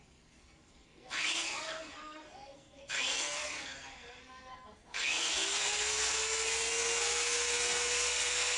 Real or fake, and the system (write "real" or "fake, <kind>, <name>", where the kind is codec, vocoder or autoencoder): fake, codec, SNAC